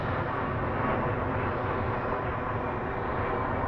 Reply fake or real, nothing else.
real